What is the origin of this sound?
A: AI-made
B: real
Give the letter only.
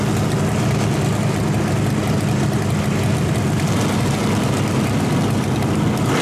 B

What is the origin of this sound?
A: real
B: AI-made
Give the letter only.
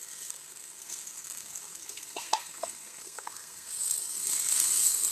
B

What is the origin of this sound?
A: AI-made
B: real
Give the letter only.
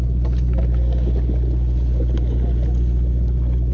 B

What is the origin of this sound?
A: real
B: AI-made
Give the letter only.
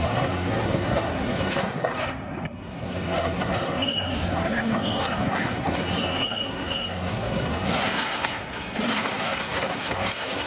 B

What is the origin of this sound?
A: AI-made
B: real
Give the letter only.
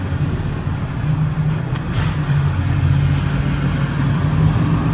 B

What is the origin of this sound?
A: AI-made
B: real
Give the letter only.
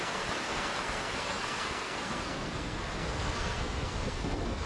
A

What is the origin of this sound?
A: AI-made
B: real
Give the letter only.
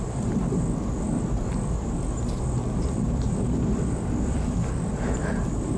B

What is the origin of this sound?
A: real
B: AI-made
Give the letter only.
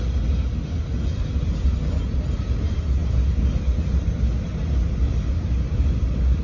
A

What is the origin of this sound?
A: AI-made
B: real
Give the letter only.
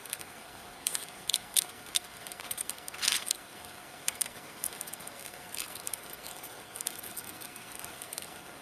A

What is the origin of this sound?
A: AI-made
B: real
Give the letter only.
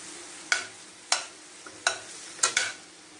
B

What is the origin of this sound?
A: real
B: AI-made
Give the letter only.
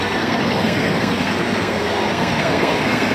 B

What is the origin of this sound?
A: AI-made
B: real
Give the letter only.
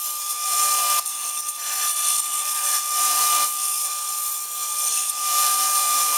A